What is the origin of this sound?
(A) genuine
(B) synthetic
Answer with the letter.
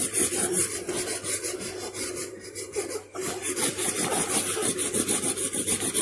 B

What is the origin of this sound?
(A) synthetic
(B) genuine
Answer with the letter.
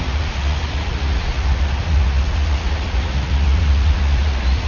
A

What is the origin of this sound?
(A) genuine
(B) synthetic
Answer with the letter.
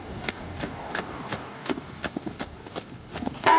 B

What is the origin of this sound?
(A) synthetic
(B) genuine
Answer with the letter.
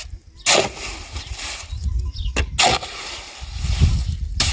B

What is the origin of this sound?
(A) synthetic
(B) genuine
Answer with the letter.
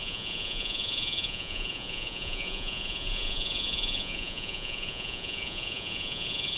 A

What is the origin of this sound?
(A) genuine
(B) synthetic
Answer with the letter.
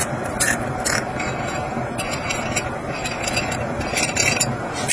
A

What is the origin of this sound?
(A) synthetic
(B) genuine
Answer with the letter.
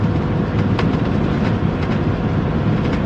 B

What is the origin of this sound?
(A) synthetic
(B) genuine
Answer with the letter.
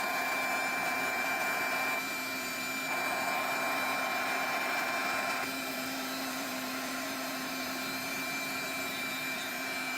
A